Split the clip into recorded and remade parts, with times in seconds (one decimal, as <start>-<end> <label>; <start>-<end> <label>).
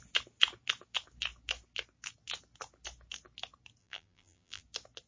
0.0-3.8 recorded; 3.8-4.6 remade; 4.6-5.1 recorded